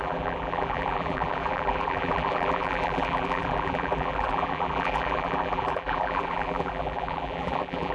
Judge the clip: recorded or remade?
remade